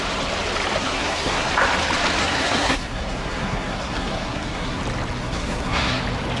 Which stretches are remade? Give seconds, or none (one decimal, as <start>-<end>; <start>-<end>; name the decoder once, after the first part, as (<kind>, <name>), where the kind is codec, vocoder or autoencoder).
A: 0.8-1.5 (codec, SNAC); 2.2-4.8; 5.2-6.0